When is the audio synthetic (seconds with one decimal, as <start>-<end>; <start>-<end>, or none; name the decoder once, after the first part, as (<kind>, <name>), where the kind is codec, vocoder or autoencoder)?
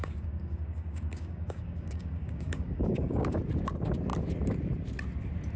0.0-3.4 (codec, DAC)